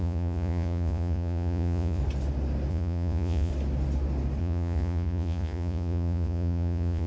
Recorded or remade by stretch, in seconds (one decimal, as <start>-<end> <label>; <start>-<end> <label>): 0.0-2.0 remade; 2.0-2.7 recorded; 2.7-3.5 remade; 3.5-4.4 recorded; 4.4-7.1 remade